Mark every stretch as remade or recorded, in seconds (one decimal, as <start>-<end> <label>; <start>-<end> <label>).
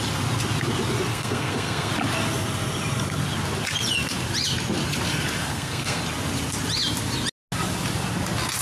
0.0-1.1 recorded; 1.1-1.9 remade; 1.9-5.4 recorded; 5.4-6.0 remade; 6.0-8.6 recorded